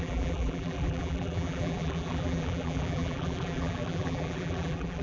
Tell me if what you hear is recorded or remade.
remade